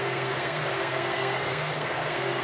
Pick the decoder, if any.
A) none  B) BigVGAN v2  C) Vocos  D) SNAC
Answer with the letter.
D